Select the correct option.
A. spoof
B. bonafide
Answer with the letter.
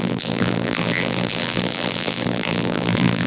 A